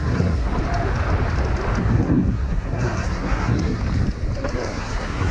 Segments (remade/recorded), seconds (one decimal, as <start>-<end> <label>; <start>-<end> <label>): 0.0-0.5 remade; 0.5-1.8 recorded; 1.8-3.8 remade; 3.8-4.5 recorded; 4.5-5.3 remade